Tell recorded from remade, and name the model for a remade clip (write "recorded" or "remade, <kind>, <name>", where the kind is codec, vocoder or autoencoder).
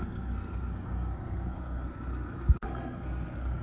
remade, codec, SNAC